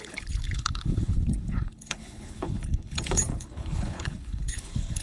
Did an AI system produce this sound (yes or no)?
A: yes